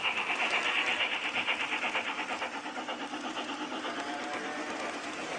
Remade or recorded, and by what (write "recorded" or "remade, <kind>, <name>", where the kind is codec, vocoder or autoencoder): recorded